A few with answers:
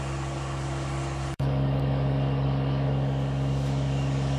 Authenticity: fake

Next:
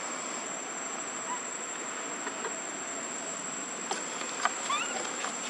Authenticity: real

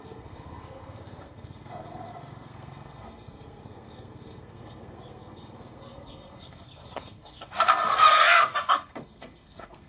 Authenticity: fake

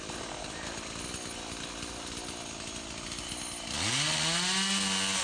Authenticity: real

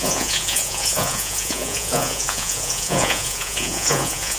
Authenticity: fake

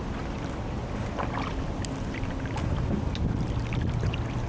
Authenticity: real